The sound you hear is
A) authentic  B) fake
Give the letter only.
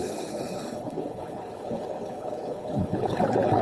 B